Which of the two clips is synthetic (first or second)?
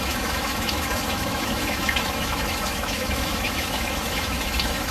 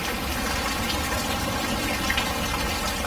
first